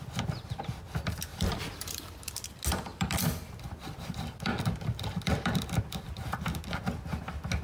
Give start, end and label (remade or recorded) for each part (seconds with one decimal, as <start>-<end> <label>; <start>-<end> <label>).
0.0-1.3 recorded; 1.3-2.1 remade; 2.1-2.9 recorded; 2.9-6.6 remade; 6.6-7.6 recorded